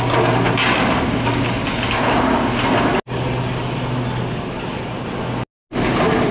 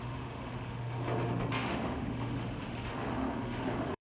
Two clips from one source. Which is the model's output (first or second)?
second